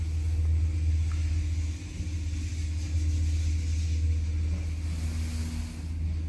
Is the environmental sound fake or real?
real